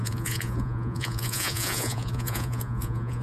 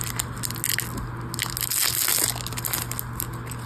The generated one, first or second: first